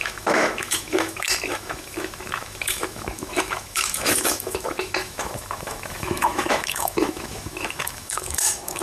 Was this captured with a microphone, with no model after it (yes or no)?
no